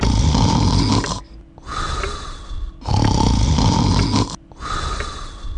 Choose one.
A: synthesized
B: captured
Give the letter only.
B